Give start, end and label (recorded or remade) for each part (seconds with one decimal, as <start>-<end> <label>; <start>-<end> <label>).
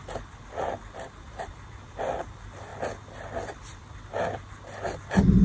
0.0-5.4 recorded